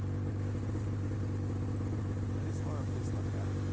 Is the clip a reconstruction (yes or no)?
no